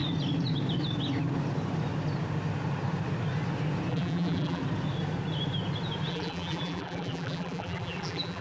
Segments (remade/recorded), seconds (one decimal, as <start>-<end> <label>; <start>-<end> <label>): 0.0-3.9 recorded; 3.9-4.6 remade; 4.6-6.1 recorded; 6.1-8.4 remade